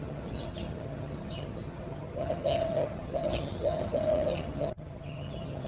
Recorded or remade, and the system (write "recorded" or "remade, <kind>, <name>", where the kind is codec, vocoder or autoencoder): remade, vocoder, HiFi-GAN